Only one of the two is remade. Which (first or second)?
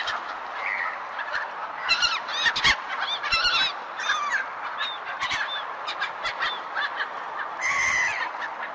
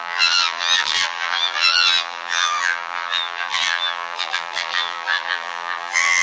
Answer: second